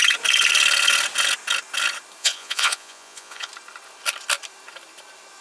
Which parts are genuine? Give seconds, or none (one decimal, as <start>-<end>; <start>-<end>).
0.0-2.2; 3.5-5.4

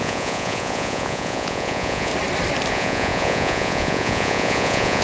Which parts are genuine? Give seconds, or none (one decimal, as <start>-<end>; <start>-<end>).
2.1-2.7